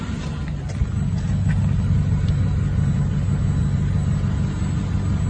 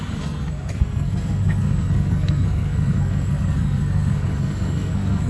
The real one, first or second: first